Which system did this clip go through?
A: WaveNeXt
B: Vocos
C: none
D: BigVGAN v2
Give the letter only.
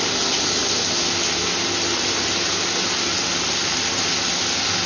C